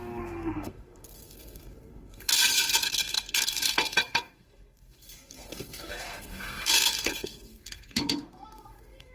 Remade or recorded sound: remade